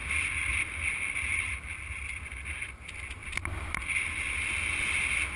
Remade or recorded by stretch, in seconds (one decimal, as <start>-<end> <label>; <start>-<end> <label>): 0.0-5.4 recorded